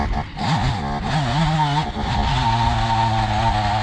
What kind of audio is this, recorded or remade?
recorded